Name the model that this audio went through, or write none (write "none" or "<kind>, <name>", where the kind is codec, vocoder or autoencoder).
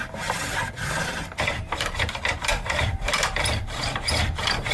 vocoder, BigVGAN v2